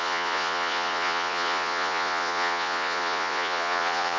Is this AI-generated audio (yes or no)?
yes